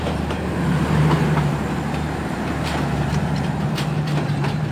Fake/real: fake